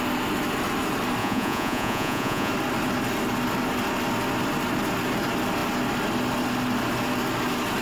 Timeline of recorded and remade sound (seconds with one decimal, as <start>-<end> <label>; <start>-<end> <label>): 0.0-1.2 recorded; 1.2-2.5 remade; 2.5-7.8 recorded